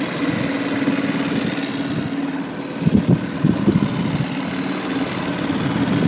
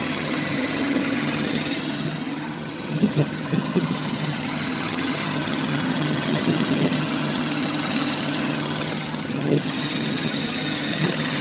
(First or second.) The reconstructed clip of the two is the second